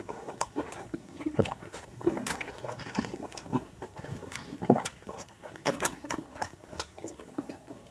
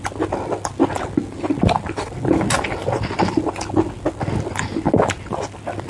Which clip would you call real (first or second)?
second